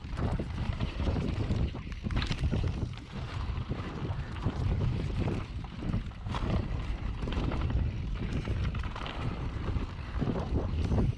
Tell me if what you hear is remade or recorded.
remade